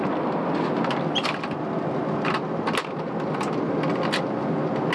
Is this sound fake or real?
real